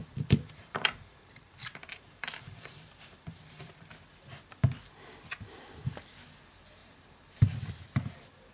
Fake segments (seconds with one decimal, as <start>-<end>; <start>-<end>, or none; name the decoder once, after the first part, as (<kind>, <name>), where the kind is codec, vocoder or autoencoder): 0.0-3.9 (vocoder, BigVGAN v2); 6.8-7.7